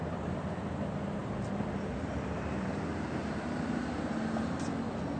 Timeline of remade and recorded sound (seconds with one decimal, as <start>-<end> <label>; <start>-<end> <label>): 0.0-1.2 recorded; 1.2-4.0 remade; 4.0-5.2 recorded

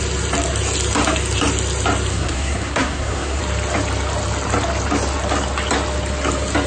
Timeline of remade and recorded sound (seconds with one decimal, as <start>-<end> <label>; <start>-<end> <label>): 0.0-2.1 recorded; 2.1-3.4 remade; 3.4-6.7 recorded

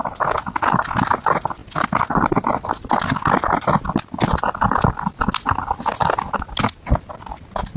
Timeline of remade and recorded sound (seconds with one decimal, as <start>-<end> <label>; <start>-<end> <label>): 0.0-7.8 recorded

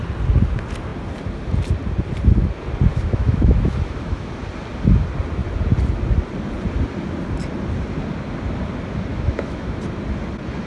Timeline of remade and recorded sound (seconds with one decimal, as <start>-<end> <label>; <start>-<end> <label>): 0.0-2.9 recorded; 2.9-4.3 remade; 4.3-9.1 recorded; 9.1-9.8 remade; 9.8-10.7 recorded

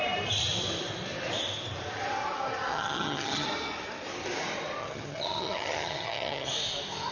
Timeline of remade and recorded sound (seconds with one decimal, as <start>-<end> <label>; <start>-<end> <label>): 0.0-2.7 recorded; 2.7-3.5 remade; 3.5-4.8 recorded; 4.8-6.5 remade; 6.5-7.1 recorded

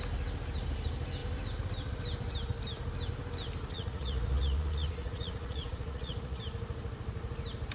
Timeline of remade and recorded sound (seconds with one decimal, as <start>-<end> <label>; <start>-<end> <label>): 0.0-3.7 recorded; 3.7-6.4 remade; 6.4-7.7 recorded

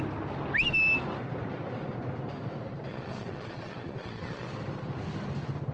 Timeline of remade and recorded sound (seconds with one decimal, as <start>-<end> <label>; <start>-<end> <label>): 0.0-2.9 recorded; 2.9-4.5 remade; 4.5-5.7 recorded

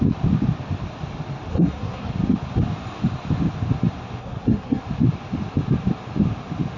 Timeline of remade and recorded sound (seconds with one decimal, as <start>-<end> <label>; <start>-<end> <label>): 0.0-1.5 recorded; 1.5-2.1 remade; 2.1-4.2 recorded; 4.2-4.8 remade; 4.8-6.8 recorded